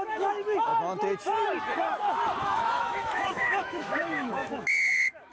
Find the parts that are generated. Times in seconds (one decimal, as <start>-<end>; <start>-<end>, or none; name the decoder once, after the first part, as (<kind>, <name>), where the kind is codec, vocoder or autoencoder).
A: 0.0-0.7 (autoencoder, DAC-VAE); 2.4-5.3